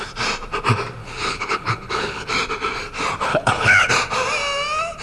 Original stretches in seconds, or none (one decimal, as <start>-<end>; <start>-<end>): 0.0-1.0; 2.3-3.3; 3.9-5.0